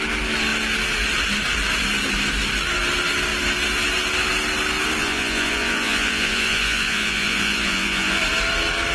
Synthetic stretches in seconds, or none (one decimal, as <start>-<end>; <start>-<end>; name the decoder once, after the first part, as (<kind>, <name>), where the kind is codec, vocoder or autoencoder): 5.0-8.2 (vocoder, Vocos)